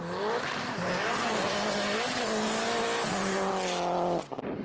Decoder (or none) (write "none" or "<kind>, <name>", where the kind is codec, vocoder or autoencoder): none